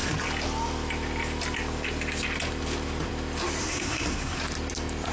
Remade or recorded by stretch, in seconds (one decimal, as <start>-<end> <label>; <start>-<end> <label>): 0.0-3.6 recorded; 3.6-4.4 remade; 4.4-5.1 recorded

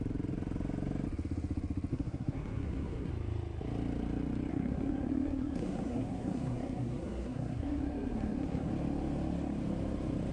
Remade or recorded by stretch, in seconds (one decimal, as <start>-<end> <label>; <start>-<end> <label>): 0.0-1.9 recorded; 1.9-3.1 remade; 3.1-4.5 recorded; 4.5-8.7 remade; 8.7-10.3 recorded